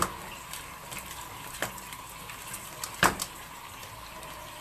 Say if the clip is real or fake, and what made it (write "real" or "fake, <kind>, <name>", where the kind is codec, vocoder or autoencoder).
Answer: real